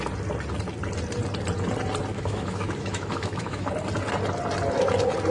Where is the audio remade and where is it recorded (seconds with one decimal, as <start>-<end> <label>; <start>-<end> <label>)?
0.0-2.1 recorded; 2.1-3.7 remade; 3.7-5.3 recorded